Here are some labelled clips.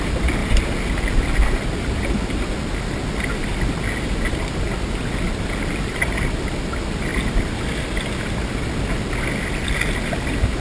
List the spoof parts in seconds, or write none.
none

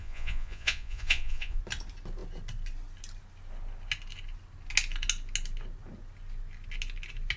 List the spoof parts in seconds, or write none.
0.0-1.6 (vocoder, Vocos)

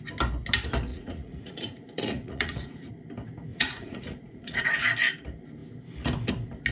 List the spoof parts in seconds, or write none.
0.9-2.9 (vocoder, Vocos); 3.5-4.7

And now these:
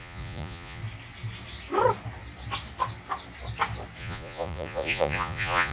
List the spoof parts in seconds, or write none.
0.0-0.8 (vocoder, Vocos); 4.0-5.7

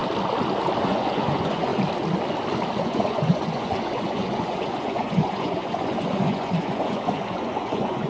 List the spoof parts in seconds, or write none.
0.8-1.7 (vocoder, Vocos); 2.8-8.1